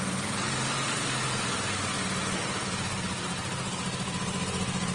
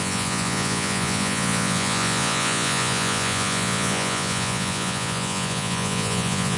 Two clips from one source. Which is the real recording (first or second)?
first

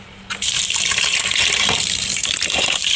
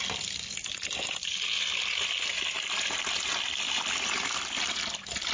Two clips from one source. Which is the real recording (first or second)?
second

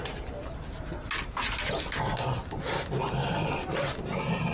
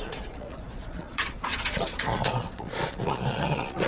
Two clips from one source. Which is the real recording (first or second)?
first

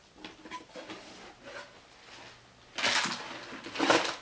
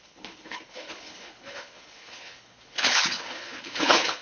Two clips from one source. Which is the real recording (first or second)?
first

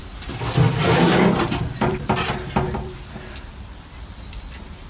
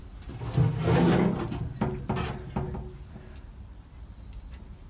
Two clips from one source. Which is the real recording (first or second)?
second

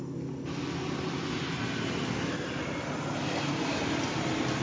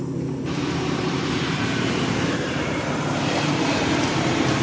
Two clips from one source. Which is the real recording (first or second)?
first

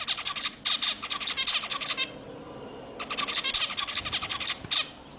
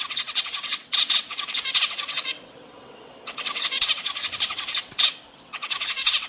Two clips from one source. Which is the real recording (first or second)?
first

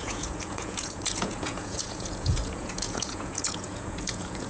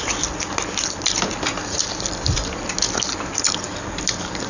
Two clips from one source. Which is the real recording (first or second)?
second